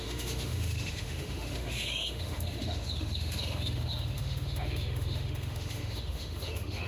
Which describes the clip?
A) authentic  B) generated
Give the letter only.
B